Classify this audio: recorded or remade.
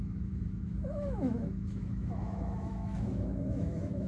remade